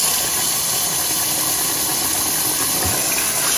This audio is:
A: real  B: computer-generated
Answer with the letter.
A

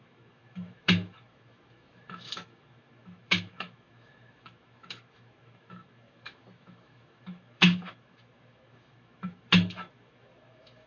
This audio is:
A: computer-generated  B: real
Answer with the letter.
A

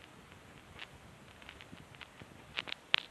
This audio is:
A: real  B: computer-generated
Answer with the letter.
A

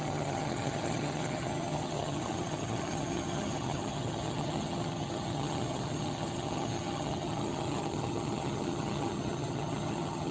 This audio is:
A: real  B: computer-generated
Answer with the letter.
B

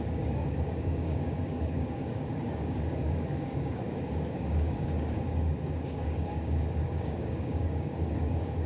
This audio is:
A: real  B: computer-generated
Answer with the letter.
B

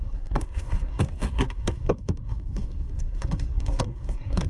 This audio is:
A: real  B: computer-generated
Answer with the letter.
B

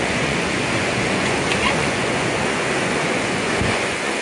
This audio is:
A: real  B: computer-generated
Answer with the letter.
B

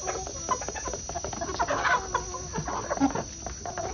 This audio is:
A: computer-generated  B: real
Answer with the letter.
B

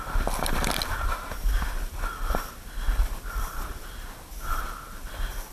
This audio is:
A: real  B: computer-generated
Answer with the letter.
A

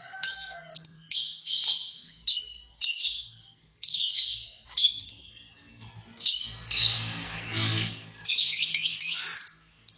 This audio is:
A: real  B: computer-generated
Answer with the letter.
B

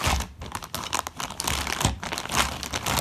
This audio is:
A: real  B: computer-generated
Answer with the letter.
A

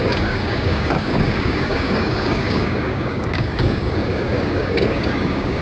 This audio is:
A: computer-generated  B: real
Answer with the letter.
A